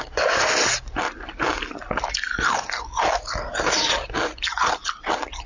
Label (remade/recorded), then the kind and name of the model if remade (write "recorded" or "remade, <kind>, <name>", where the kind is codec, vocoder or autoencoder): recorded